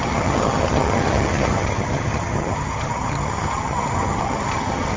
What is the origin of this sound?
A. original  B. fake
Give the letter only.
B